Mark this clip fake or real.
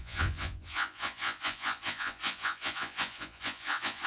fake